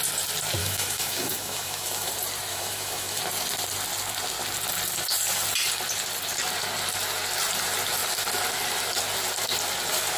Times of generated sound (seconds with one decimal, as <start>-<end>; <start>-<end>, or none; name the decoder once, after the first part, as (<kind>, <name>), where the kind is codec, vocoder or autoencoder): 0.6-2.1 (autoencoder, DAC-VAE); 2.5-3.2